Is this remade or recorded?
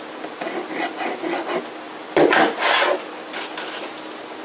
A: recorded